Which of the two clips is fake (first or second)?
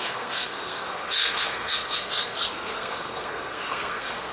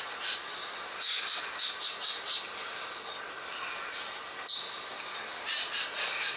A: first